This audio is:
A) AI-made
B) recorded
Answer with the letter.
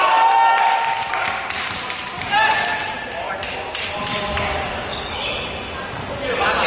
B